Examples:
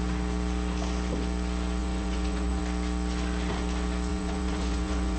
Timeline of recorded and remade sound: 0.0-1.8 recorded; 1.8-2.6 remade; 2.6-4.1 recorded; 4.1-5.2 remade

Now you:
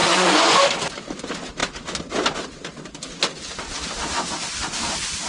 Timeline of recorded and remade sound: 0.0-0.6 remade; 0.6-5.3 recorded

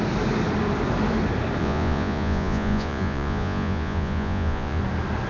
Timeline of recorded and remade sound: 0.0-1.6 recorded; 1.6-4.8 remade; 4.8-5.3 recorded

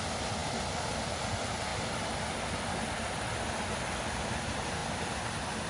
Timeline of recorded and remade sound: 0.0-5.7 recorded

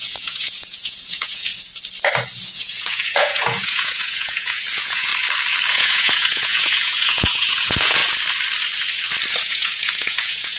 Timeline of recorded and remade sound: 0.0-1.5 remade; 1.5-2.4 recorded; 2.4-5.1 remade; 5.1-5.7 recorded; 5.7-8.0 remade; 8.0-9.3 recorded; 9.3-10.6 remade

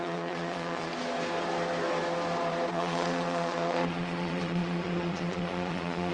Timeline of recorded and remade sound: 0.0-0.9 remade; 0.9-2.7 recorded; 2.7-6.1 remade